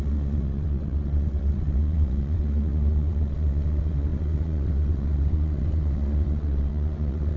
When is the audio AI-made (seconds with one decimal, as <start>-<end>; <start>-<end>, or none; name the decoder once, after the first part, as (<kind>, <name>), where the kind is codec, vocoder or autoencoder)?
0.0-7.4 (vocoder, WaveNeXt)